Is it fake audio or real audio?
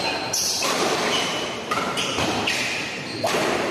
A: fake